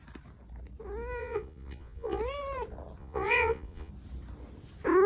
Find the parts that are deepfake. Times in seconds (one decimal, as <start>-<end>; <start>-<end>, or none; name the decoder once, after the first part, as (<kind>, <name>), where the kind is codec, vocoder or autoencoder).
1.2-2.2 (vocoder, Vocos); 3.0-3.9